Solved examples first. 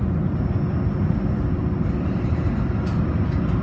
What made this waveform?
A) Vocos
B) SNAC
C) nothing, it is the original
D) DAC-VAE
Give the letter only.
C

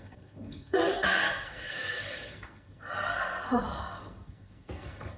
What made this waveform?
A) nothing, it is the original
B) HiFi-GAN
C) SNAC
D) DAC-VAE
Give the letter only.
C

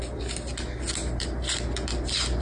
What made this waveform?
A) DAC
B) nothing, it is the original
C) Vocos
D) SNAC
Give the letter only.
B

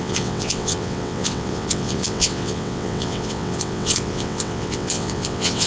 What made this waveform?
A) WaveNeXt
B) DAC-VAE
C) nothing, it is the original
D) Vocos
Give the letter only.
A